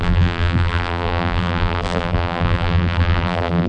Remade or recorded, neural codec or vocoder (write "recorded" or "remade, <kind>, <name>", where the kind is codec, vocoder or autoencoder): remade, vocoder, BigVGAN v2